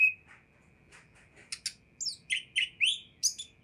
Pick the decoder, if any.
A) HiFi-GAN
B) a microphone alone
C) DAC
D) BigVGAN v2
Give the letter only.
B